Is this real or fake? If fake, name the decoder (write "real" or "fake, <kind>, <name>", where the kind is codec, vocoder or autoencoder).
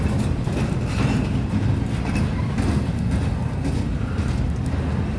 real